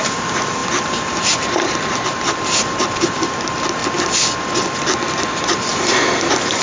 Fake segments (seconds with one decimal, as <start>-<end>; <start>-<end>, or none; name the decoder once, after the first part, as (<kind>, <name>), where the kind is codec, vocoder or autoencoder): 0.0-3.8 (vocoder, BigVGAN v2); 5.3-5.7